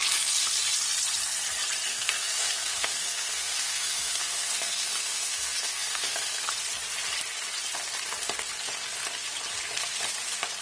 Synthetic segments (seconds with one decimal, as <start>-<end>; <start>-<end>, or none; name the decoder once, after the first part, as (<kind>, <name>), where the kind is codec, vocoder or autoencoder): 1.9-6.5 (codec, SNAC)